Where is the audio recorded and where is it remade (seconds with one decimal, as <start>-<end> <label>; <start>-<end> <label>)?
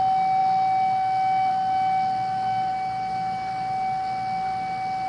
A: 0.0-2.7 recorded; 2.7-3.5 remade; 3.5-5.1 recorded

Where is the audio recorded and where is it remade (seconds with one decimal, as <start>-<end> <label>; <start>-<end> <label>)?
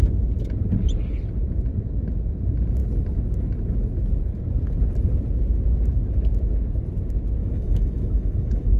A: 0.0-7.4 recorded; 7.4-8.8 remade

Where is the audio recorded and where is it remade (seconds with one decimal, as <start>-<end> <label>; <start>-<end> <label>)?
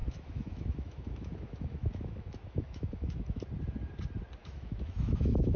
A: 0.0-3.4 remade; 3.4-4.4 recorded; 4.4-5.6 remade